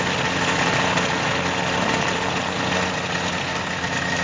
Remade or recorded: recorded